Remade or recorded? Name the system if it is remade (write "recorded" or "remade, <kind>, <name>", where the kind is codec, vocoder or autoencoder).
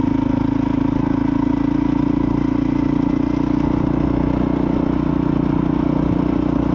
recorded